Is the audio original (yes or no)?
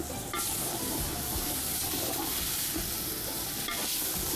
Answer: no